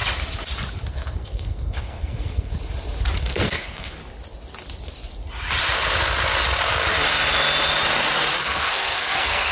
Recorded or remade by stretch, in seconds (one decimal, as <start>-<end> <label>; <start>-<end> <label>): 0.0-0.9 recorded; 0.9-2.5 remade; 2.5-3.2 recorded; 3.2-4.0 remade; 4.0-8.4 recorded; 8.4-9.5 remade